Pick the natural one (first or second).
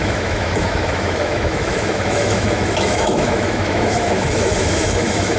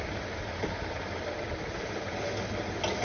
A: second